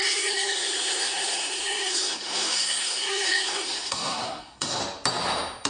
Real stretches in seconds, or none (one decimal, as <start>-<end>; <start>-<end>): 4.8-5.7

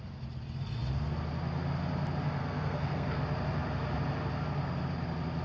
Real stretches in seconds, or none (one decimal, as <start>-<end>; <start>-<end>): 0.0-2.4; 3.2-5.4

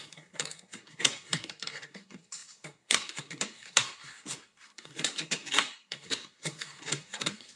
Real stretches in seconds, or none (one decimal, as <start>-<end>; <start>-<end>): none

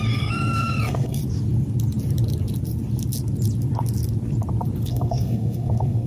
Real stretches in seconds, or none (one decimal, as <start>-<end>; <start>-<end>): 1.2-4.9

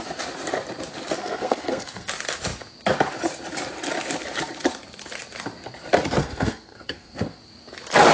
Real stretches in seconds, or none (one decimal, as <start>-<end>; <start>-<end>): 0.0-1.2; 2.1-6.2; 7.4-8.1

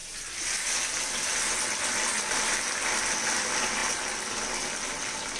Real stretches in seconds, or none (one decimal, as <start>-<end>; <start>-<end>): 0.0-5.4

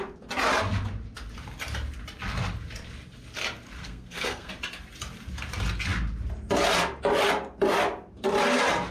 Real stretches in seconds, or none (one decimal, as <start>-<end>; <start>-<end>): 0.0-3.8; 4.5-8.9